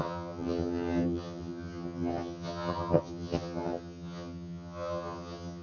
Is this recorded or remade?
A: remade